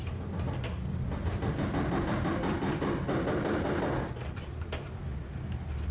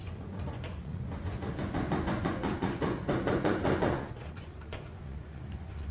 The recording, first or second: first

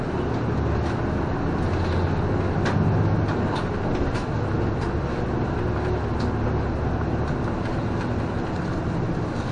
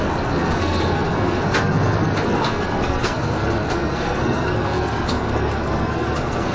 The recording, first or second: first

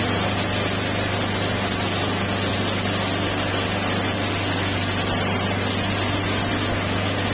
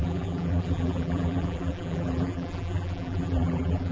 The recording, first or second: first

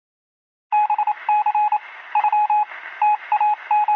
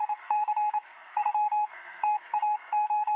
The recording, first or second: first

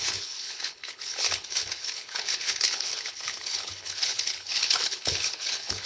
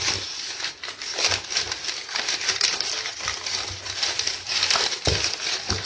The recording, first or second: second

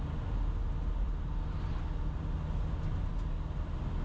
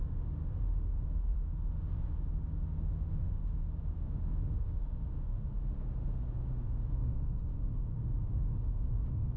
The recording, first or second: first